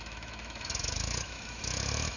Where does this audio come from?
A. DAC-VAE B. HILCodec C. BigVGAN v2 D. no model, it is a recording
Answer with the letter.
A